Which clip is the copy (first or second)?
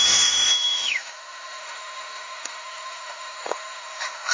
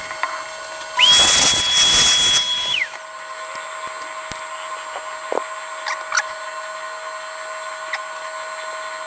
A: first